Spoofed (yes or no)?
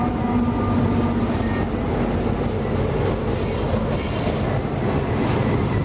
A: no